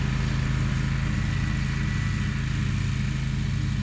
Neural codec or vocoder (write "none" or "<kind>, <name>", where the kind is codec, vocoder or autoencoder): none